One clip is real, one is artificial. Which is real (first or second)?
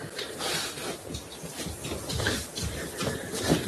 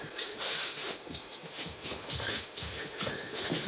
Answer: first